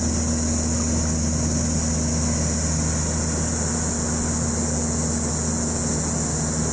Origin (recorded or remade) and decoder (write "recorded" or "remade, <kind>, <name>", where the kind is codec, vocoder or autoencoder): recorded